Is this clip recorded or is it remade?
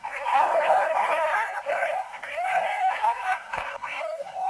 remade